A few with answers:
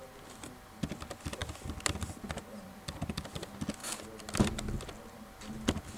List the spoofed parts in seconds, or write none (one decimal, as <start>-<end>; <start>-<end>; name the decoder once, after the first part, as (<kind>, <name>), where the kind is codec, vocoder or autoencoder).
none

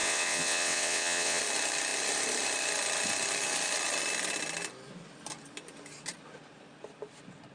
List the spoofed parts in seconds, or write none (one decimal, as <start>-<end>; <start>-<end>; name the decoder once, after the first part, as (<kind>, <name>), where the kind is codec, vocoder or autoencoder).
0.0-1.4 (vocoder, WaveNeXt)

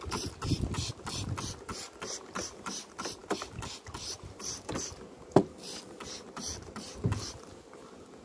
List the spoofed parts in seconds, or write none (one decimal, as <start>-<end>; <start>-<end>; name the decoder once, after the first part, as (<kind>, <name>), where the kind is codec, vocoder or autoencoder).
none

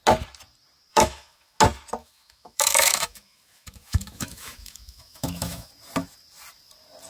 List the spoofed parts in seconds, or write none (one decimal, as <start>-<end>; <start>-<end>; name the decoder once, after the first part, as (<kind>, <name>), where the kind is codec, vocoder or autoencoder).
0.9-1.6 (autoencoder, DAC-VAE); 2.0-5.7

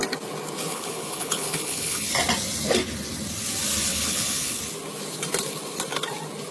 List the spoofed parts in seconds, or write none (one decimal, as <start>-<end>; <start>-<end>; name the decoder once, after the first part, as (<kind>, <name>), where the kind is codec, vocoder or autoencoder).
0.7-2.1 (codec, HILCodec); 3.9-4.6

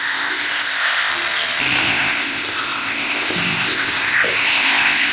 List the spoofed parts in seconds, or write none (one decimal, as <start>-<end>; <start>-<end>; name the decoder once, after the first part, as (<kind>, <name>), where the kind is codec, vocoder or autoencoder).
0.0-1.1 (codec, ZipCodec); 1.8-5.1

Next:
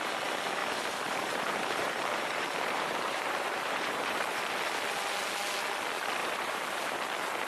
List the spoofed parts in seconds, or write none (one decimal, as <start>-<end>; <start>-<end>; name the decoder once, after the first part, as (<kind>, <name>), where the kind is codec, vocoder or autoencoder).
0.6-4.4 (vocoder, BigVGAN v2); 6.2-7.0

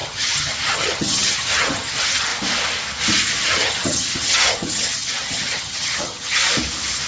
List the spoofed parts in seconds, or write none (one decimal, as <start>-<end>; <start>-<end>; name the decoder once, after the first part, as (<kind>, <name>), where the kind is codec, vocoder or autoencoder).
0.0-2.3 (vocoder, HiFi-GAN); 3.4-6.4